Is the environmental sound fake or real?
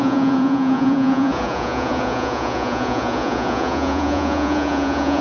fake